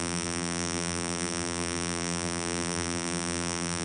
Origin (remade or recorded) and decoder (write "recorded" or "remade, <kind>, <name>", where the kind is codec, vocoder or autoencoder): remade, vocoder, BigVGAN v2